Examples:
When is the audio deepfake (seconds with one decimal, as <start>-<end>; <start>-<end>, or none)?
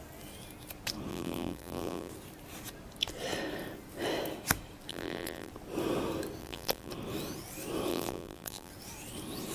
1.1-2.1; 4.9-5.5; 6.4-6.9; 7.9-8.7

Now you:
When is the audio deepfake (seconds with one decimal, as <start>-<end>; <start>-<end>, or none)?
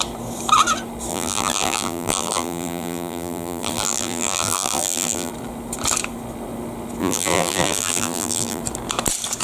1.1-5.3; 7.0-8.6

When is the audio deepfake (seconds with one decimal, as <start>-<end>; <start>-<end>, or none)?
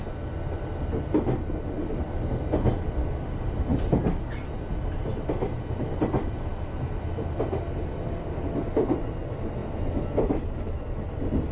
none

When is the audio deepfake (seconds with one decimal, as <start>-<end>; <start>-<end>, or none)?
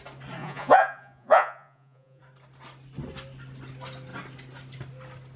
0.4-2.2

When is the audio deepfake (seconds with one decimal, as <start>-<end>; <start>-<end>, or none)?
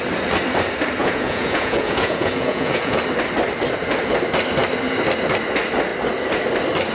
1.0-3.0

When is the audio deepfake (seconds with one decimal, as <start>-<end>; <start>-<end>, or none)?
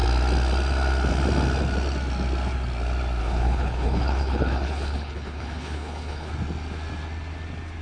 3.2-6.3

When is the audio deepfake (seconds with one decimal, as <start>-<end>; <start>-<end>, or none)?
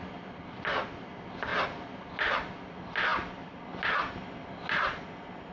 none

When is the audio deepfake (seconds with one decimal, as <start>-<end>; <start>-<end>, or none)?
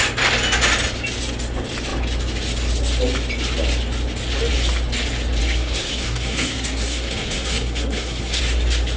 5.4-8.4